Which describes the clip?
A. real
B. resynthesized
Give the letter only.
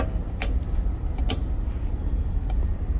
B